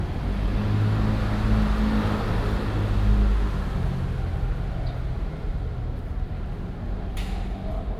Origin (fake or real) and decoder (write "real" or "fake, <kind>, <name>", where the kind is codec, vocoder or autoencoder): real